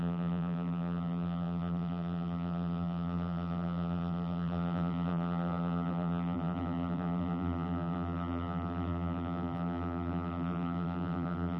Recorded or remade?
remade